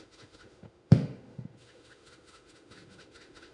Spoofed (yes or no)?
yes